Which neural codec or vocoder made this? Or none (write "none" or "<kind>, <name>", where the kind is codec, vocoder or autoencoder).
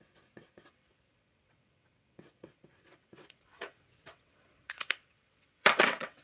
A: vocoder, WaveNeXt